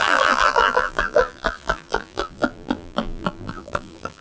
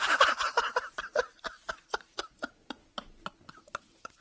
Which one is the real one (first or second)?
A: second